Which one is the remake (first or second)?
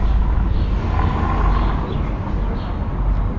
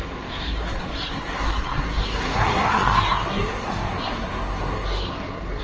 second